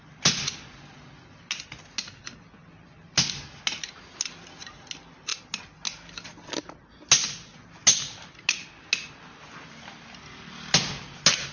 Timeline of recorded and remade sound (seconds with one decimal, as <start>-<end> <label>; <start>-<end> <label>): 0.0-11.5 recorded